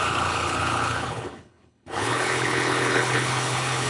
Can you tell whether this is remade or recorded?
remade